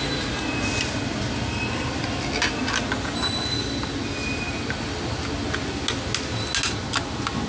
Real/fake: real